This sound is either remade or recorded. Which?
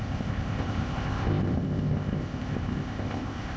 remade